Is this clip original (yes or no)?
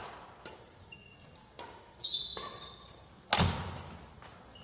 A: yes